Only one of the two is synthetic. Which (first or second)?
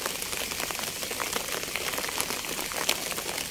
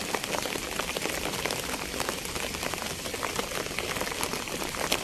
second